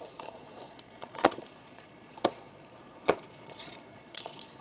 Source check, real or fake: fake